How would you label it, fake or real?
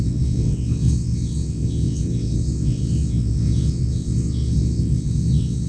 fake